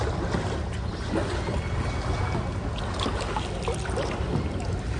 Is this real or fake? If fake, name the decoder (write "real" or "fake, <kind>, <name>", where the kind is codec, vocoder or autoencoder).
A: real